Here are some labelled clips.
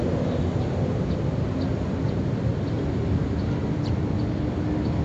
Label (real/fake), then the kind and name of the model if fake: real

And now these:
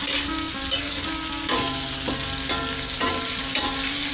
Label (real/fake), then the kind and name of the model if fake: real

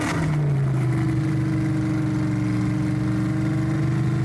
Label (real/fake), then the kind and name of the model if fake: real